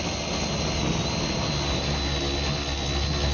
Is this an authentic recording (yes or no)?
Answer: yes